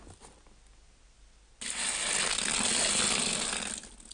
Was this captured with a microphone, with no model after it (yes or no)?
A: yes